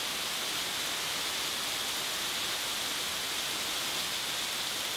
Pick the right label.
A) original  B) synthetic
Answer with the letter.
A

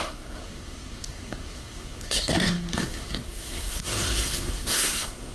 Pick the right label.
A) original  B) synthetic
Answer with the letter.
B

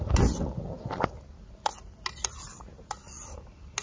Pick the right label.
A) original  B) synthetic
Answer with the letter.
A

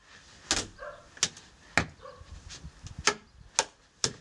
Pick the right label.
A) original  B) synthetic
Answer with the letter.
A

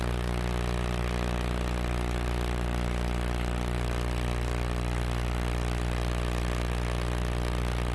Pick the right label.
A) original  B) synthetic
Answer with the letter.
A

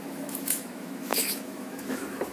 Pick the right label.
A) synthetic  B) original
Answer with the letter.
A